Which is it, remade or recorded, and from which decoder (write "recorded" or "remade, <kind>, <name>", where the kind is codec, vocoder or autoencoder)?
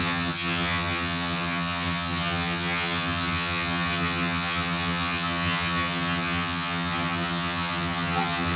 remade, vocoder, HiFi-GAN